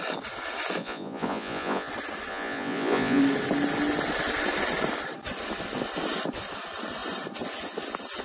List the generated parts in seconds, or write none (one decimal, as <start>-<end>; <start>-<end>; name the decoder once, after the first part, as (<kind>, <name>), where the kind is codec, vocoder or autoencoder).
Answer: 0.8-1.9 (vocoder, Vocos); 2.3-3.2